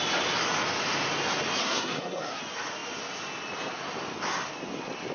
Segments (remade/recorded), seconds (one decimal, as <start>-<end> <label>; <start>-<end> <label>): 0.0-1.6 recorded; 1.6-2.4 remade; 2.4-5.1 recorded